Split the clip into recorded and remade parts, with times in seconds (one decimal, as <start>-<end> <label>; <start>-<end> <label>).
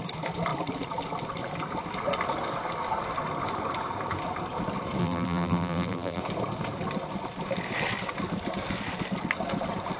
0.0-5.0 recorded; 5.0-6.2 remade; 6.2-10.0 recorded